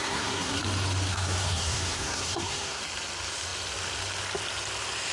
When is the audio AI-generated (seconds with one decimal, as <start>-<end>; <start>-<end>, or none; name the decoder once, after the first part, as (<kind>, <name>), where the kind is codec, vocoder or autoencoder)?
0.0-0.6 (codec, SNAC); 1.1-2.8